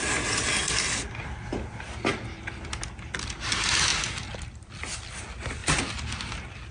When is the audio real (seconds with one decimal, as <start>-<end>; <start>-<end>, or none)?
0.0-5.6; 6.3-6.7